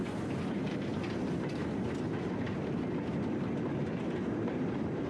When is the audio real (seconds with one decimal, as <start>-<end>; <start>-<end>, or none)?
0.9-3.8